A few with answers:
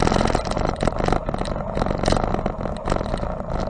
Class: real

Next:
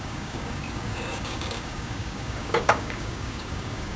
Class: fake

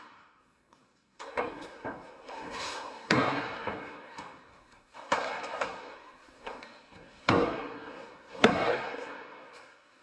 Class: fake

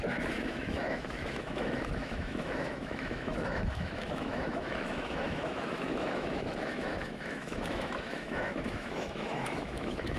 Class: fake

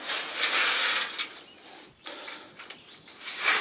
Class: real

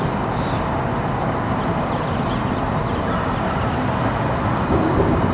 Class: real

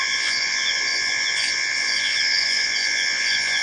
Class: fake